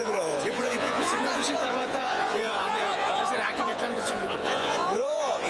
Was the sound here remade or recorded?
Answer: remade